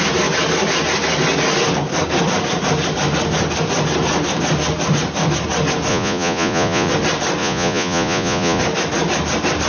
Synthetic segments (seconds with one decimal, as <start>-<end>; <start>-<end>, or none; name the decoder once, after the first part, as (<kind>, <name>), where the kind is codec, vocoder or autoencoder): 5.9-6.9 (vocoder, Vocos); 7.4-8.6